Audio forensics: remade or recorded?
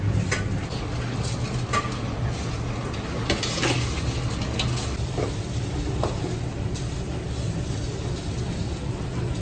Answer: recorded